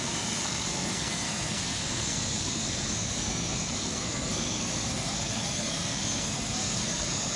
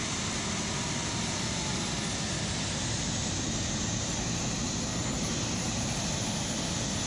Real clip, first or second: second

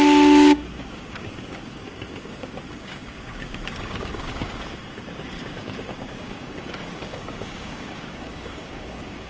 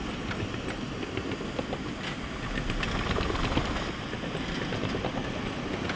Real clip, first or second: second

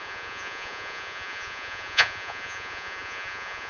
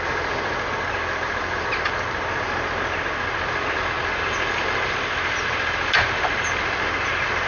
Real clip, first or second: second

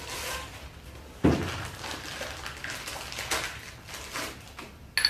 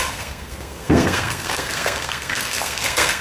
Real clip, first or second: first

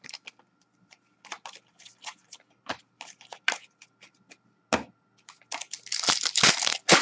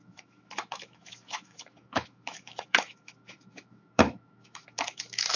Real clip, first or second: first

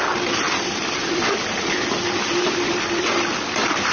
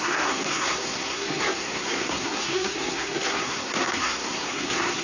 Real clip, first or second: first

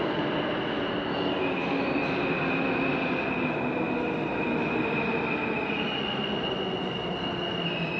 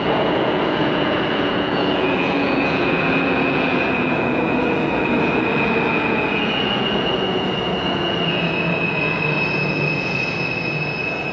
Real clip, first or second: first